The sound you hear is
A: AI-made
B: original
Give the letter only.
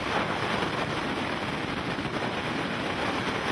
B